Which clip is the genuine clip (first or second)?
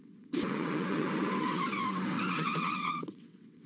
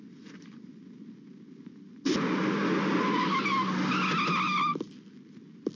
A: second